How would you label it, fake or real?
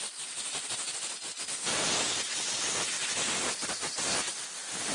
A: real